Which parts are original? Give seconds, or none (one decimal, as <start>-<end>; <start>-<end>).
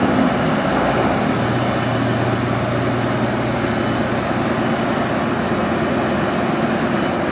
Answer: 0.0-7.3